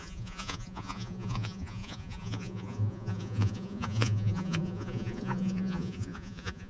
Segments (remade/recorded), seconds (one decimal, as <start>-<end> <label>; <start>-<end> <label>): 0.0-6.7 remade